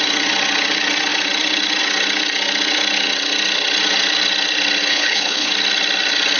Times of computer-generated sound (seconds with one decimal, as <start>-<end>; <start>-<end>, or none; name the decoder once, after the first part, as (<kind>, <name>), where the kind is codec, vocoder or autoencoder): 4.9-5.5 (codec, HILCodec)